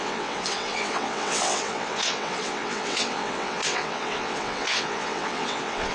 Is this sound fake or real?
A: fake